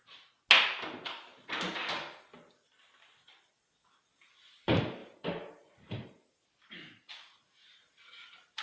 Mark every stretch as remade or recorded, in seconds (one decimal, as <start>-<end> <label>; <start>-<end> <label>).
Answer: 0.0-5.0 recorded; 5.0-7.1 remade; 7.1-7.6 recorded; 7.6-8.6 remade